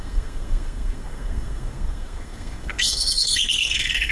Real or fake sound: fake